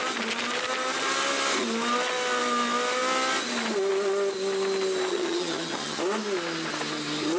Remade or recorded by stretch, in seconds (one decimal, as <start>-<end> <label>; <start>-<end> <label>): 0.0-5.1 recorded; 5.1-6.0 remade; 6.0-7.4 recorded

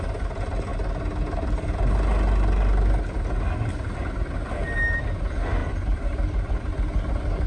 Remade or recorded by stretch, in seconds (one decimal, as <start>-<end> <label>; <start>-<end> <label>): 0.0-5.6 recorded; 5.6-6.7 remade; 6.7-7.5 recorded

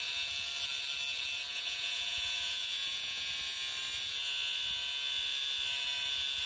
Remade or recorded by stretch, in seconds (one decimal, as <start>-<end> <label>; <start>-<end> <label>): 0.0-1.5 recorded; 1.5-3.2 remade; 3.2-6.5 recorded